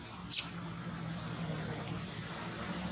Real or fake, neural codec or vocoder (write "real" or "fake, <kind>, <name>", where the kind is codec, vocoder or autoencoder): real